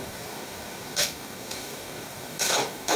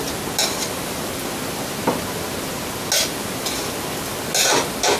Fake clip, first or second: first